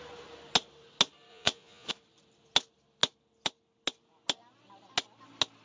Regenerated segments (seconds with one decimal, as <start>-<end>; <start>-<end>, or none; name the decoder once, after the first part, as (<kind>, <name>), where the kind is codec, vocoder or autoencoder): 1.3-1.9 (vocoder, Vocos)